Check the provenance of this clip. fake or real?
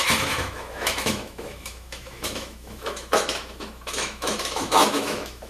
fake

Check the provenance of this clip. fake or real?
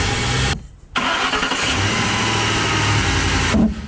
real